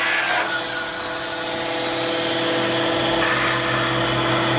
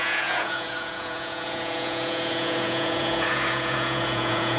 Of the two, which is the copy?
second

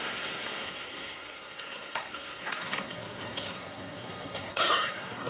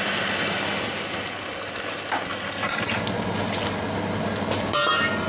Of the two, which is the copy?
first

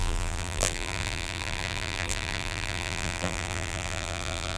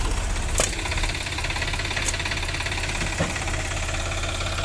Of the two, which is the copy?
first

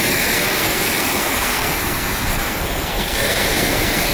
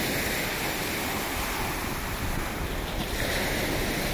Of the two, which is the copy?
first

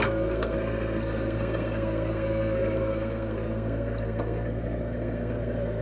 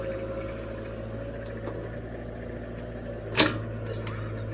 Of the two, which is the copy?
first